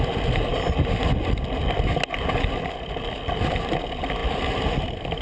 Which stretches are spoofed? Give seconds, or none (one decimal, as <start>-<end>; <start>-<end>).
none